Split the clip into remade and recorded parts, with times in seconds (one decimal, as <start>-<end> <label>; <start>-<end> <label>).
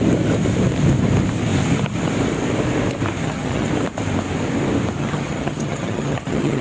0.0-3.2 recorded; 3.2-3.7 remade; 3.7-5.0 recorded; 5.0-6.6 remade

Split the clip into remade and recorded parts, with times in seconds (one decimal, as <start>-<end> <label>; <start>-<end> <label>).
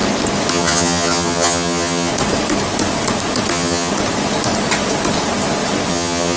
0.0-0.5 recorded; 0.5-2.1 remade; 2.1-3.5 recorded; 3.5-3.9 remade; 3.9-5.9 recorded; 5.9-6.4 remade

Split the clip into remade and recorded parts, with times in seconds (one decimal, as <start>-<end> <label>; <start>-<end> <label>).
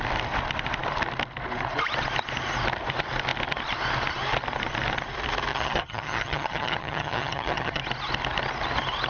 0.0-5.5 recorded; 5.5-7.8 remade; 7.8-9.1 recorded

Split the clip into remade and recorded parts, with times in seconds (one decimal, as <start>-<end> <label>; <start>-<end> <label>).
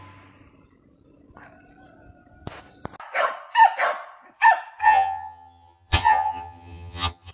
0.0-4.8 recorded; 4.8-7.3 remade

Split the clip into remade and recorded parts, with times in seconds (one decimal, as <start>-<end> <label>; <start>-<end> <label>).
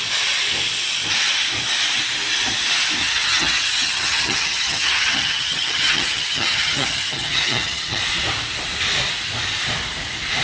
0.0-3.0 recorded; 3.0-8.0 remade; 8.0-10.4 recorded